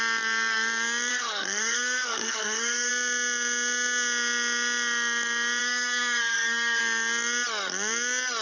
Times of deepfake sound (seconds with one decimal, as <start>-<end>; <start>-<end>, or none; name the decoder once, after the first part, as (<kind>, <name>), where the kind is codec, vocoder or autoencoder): 1.1-2.9 (codec, SNAC); 5.6-6.8